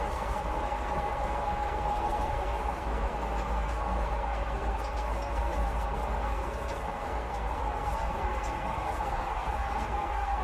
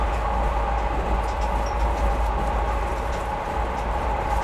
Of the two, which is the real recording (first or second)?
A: second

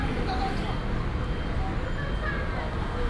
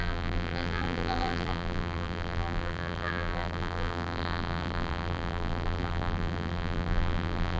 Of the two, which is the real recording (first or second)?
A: first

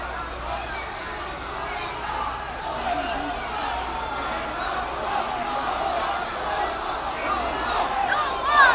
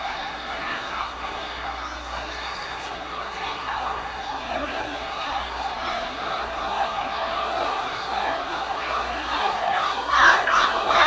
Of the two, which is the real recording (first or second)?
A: first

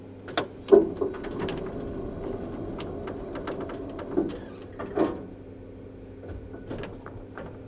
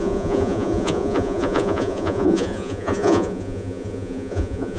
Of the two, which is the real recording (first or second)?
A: first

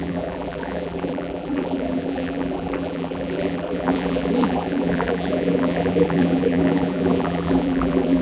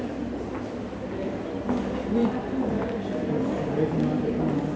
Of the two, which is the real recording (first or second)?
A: second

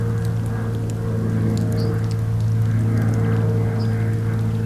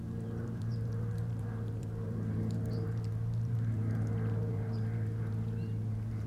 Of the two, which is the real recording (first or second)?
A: first